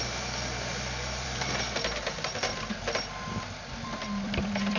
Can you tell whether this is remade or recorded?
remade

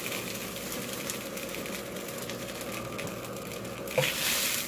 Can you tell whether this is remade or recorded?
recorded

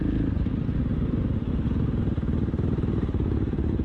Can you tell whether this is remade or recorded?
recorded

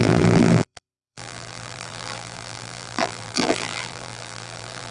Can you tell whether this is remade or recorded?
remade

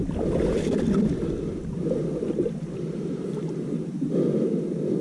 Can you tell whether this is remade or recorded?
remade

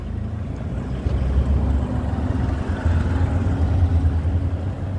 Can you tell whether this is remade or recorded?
recorded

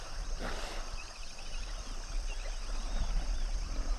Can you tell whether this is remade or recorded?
remade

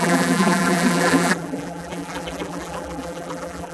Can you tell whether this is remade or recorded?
remade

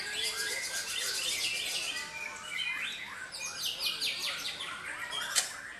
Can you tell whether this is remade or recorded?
recorded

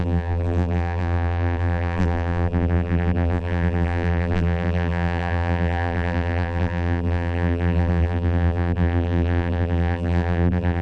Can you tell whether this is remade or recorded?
remade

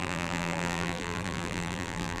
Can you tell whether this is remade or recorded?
remade